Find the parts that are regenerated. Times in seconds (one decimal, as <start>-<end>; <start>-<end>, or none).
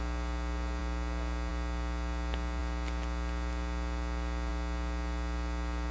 none